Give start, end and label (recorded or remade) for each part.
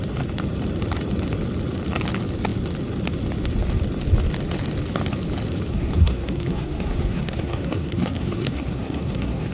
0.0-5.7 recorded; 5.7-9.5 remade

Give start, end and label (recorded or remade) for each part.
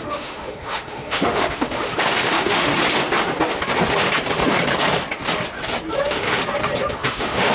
0.0-2.7 remade; 2.7-6.0 recorded; 6.0-6.4 remade; 6.4-6.9 recorded; 6.9-7.5 remade